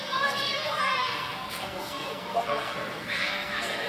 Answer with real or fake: fake